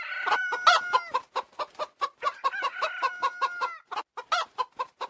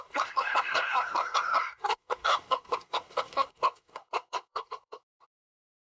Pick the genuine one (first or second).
first